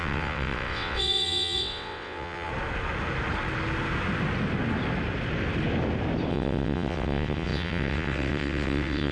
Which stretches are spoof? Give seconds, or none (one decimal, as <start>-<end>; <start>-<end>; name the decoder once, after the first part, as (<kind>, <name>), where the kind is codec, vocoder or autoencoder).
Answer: 0.0-2.5 (vocoder, WaveNeXt); 6.3-9.1